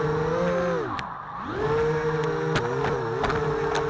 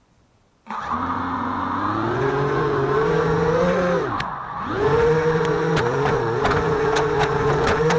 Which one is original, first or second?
first